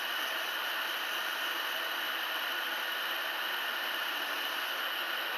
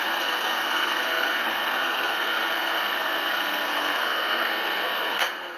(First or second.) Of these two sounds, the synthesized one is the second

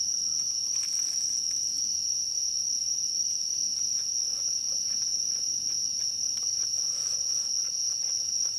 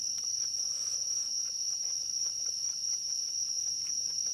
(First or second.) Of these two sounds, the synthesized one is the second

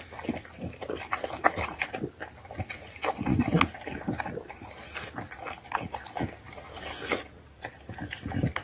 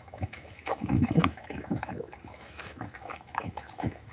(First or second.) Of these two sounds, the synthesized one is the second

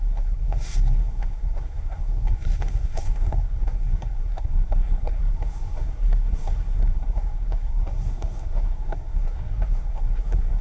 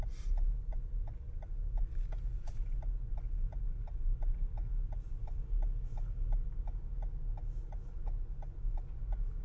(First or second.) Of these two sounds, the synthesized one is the first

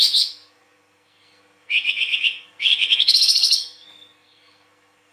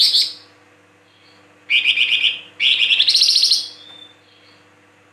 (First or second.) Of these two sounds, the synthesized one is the first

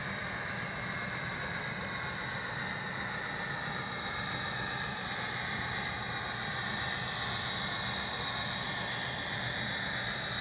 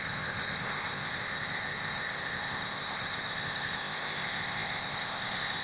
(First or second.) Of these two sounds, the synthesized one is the second